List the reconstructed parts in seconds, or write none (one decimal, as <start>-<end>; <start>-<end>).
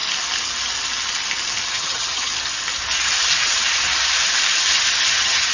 1.7-2.3; 5.1-5.5